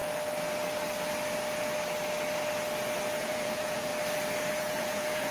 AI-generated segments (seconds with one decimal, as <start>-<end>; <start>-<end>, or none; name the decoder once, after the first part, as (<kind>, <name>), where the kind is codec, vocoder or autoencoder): 3.2-3.9 (vocoder, Vocos); 4.5-5.3